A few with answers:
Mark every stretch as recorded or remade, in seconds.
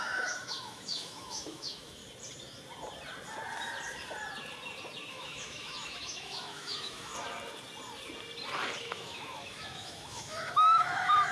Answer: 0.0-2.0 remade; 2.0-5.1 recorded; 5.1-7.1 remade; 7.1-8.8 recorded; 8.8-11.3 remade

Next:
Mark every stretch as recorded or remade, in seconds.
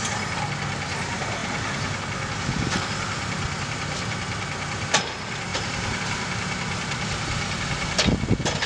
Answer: 0.0-1.4 recorded; 1.4-2.0 remade; 2.0-5.5 recorded; 5.5-6.0 remade; 6.0-8.7 recorded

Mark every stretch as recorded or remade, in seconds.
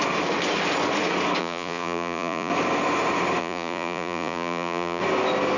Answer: 0.0-1.4 recorded; 1.4-2.5 remade; 2.5-3.4 recorded; 3.4-5.0 remade; 5.0-5.6 recorded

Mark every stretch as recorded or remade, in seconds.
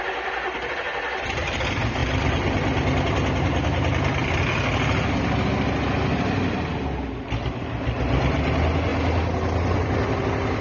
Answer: 0.0-10.6 recorded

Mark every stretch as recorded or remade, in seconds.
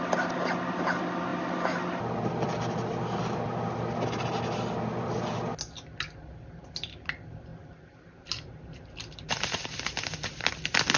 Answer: 0.0-7.5 recorded; 7.5-10.5 remade; 10.5-11.0 recorded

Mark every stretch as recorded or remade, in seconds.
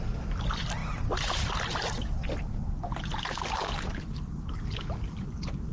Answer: 0.0-5.7 recorded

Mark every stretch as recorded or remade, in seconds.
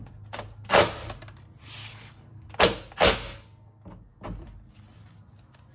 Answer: 0.0-1.8 recorded; 1.8-2.3 remade; 2.3-5.7 recorded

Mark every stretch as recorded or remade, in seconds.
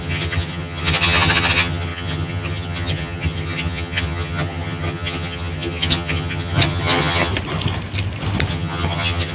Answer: 0.0-7.3 remade; 7.3-8.5 recorded; 8.5-9.3 remade